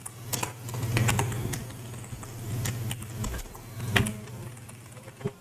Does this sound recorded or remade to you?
recorded